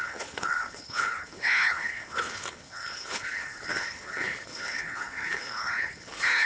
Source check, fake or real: fake